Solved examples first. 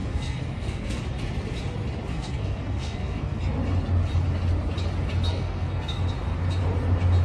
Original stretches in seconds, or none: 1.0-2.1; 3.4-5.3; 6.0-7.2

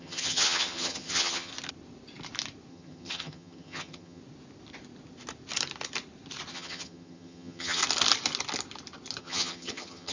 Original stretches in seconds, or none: 1.5-2.7; 4.2-6.5; 7.8-9.2

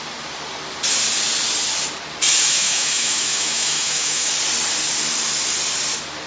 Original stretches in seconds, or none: 0.0-2.5; 4.3-6.3